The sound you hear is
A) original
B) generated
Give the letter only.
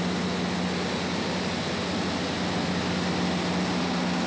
A